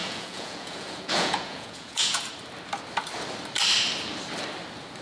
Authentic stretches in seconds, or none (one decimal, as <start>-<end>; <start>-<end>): 2.2-5.0